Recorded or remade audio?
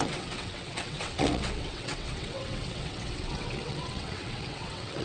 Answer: remade